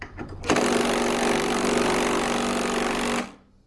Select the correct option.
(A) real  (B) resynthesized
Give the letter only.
A